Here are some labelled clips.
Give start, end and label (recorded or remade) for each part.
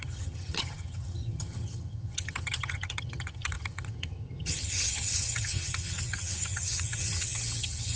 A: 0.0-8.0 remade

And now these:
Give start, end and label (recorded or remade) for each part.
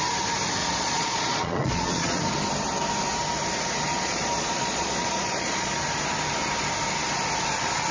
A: 0.0-0.6 recorded; 0.6-2.2 remade; 2.2-3.9 recorded; 3.9-5.7 remade; 5.7-7.9 recorded